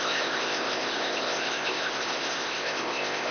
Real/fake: fake